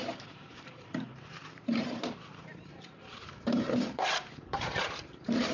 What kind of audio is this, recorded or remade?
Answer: remade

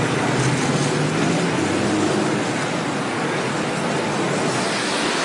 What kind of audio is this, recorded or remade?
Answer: recorded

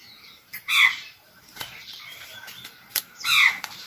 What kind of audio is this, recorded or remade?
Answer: remade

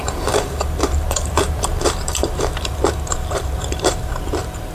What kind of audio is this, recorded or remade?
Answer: remade